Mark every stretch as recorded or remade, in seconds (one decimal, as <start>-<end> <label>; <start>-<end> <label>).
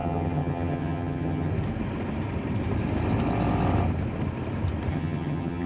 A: 0.0-1.5 remade; 1.5-4.9 recorded; 4.9-5.7 remade